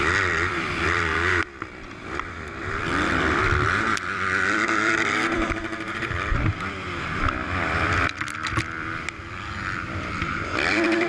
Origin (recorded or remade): remade